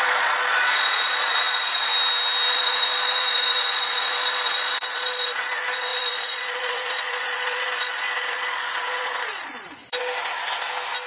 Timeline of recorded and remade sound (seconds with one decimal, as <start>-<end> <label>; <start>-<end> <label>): 0.0-1.9 remade; 1.9-2.5 recorded; 2.5-9.8 remade; 9.8-11.1 recorded